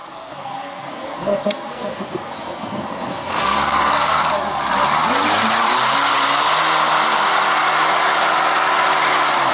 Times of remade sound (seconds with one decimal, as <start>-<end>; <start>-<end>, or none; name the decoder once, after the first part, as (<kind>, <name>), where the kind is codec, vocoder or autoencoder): 0.0-4.2 (codec, SNAC)